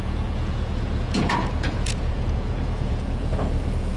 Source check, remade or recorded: remade